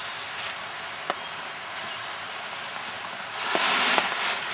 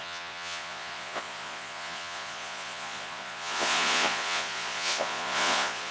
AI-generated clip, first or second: second